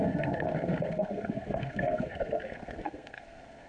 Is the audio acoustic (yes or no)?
no